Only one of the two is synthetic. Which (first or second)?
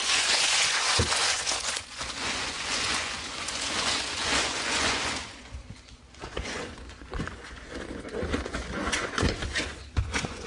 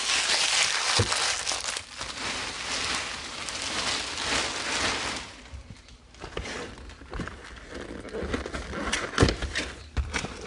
first